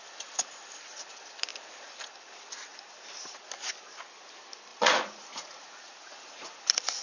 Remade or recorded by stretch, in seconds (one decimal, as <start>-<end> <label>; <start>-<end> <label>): 0.0-4.7 recorded; 4.7-6.6 remade; 6.6-7.0 recorded